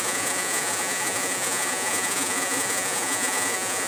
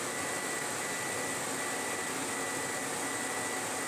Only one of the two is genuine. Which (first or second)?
second